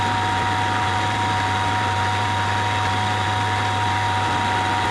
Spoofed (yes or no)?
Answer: no